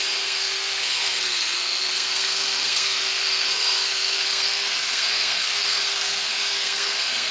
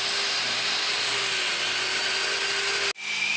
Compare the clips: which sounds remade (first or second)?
first